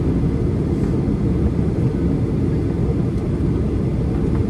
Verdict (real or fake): real